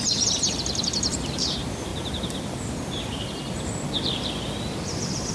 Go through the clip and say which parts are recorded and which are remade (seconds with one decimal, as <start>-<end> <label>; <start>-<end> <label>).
0.0-1.9 remade; 1.9-5.3 recorded